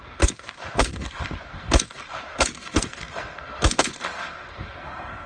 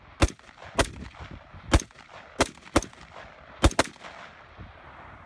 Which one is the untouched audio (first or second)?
second